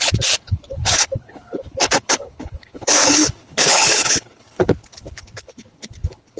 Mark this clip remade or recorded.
remade